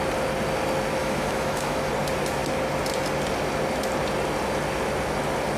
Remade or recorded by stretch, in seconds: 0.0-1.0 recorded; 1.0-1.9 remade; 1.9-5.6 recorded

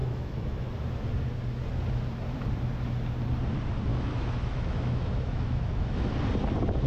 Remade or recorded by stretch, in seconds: 0.0-0.7 remade; 0.7-3.9 recorded; 3.9-6.1 remade; 6.1-6.9 recorded

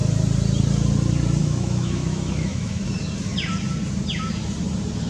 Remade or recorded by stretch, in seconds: 0.0-1.4 recorded; 1.4-2.8 remade; 2.8-5.1 recorded

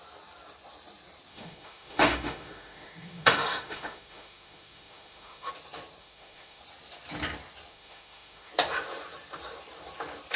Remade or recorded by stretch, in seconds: 0.0-1.3 recorded; 1.3-5.5 remade; 5.5-6.0 recorded; 6.0-6.6 remade; 6.6-7.7 recorded; 7.7-8.5 remade; 8.5-10.4 recorded

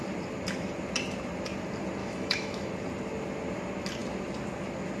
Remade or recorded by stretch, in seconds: 0.0-2.0 recorded; 2.0-2.7 remade; 2.7-5.0 recorded

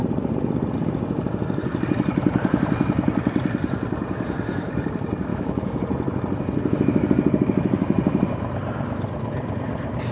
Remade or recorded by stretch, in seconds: 0.0-5.3 recorded; 5.3-5.8 remade; 5.8-10.1 recorded

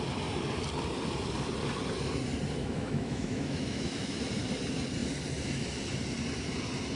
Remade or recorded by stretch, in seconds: 0.0-2.6 recorded; 2.6-4.2 remade; 4.2-7.0 recorded

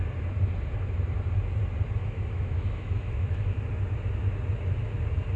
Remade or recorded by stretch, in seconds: 0.0-2.0 recorded; 2.0-3.6 remade; 3.6-5.4 recorded